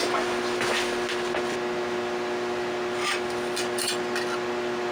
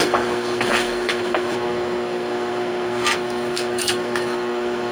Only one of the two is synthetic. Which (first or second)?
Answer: second